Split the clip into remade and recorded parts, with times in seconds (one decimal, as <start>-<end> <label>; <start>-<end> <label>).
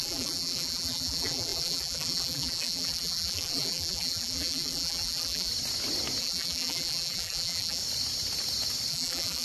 0.0-5.5 remade; 5.5-6.2 recorded; 6.2-7.8 remade; 7.8-8.9 recorded; 8.9-9.4 remade